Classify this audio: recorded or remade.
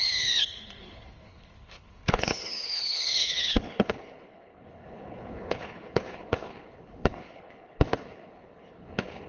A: remade